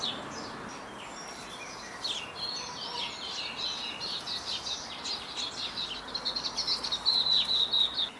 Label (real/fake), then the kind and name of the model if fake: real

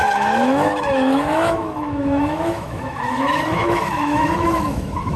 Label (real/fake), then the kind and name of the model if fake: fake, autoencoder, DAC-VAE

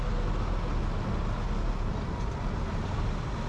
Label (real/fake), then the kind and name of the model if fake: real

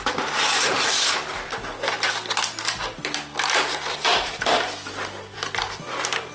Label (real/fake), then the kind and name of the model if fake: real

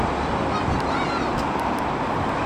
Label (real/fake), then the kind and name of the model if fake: real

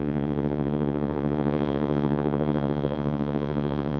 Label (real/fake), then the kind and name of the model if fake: fake, vocoder, Vocos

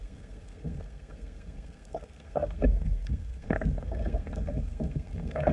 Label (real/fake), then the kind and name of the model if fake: fake, codec, SNAC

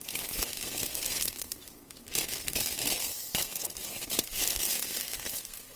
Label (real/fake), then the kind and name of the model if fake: fake, codec, SNAC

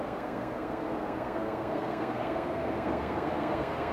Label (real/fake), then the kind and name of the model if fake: fake, codec, SNAC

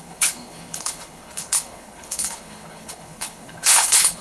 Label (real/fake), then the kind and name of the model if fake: fake, codec, HILCodec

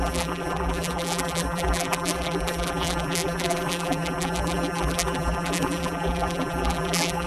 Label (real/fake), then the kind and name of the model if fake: fake, vocoder, BigVGAN v2